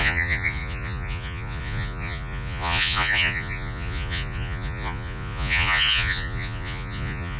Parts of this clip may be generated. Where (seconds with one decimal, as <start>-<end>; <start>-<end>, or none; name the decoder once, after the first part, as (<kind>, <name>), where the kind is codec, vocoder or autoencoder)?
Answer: 0.0-7.4 (vocoder, Vocos)